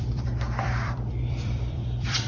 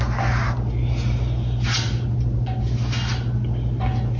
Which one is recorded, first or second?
second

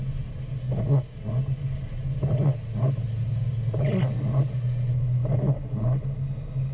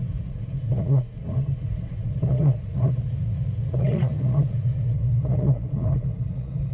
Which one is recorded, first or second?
first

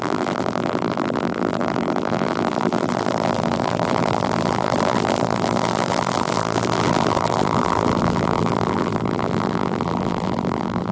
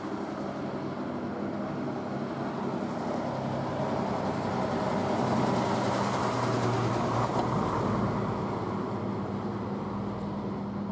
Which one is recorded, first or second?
second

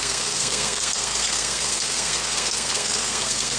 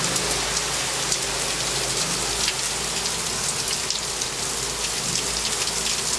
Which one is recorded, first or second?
second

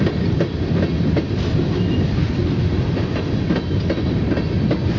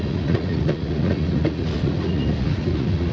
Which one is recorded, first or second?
first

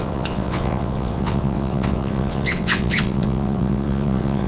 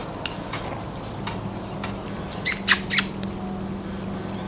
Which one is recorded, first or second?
second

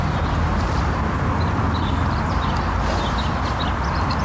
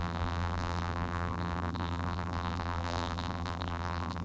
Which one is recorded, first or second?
first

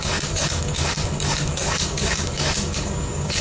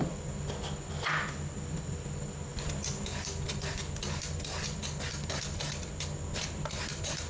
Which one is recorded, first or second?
second